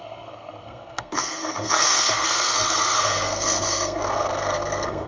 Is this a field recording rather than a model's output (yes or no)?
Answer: no